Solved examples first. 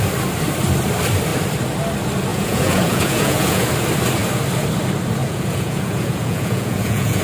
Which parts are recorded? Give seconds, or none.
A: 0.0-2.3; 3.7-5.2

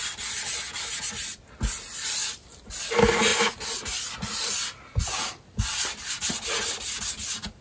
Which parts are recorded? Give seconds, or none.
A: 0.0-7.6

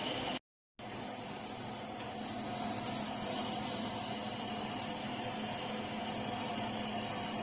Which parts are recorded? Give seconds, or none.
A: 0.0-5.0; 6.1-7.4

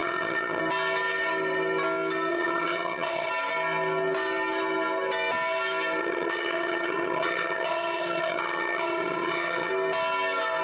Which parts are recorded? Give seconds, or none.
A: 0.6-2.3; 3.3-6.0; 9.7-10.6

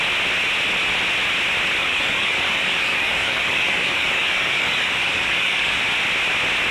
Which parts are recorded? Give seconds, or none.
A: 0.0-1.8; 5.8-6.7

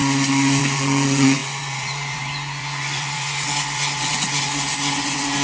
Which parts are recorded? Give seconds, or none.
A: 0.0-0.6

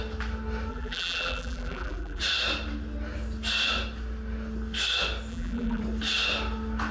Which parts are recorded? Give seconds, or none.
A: 0.0-0.7; 2.2-5.3; 5.8-6.9

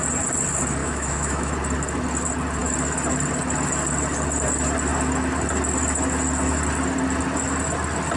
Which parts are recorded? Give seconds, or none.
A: 0.0-0.8; 1.5-8.2